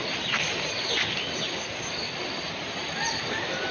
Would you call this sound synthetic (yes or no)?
no